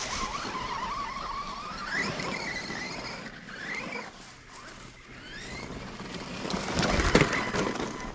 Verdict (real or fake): real